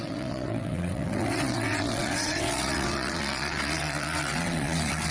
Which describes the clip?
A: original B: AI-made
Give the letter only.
B